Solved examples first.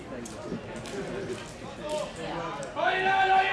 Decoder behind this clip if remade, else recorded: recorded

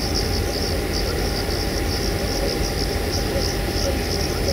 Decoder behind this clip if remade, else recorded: recorded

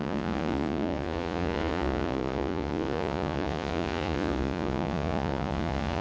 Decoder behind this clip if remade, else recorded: remade, vocoder, Vocos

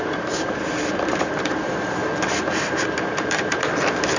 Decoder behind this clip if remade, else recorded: remade, vocoder, BigVGAN v2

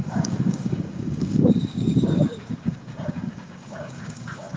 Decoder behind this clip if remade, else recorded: remade, codec, DAC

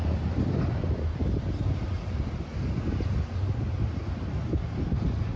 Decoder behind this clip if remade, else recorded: recorded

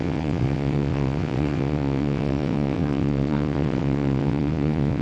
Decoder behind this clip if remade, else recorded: remade, vocoder, WaveNeXt